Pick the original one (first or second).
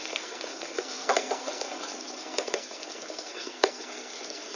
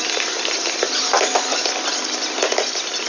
second